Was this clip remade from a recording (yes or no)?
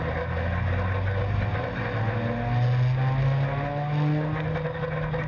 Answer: no